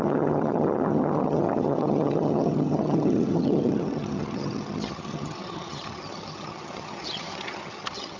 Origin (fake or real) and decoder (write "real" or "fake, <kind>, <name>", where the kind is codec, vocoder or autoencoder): fake, vocoder, HiFi-GAN